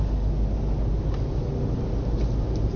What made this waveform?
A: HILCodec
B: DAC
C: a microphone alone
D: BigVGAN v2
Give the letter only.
C